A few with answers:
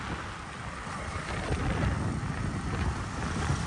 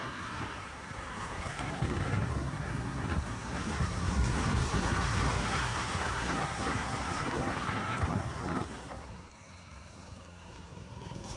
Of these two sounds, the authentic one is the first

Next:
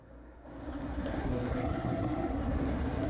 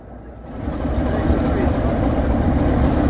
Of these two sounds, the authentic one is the second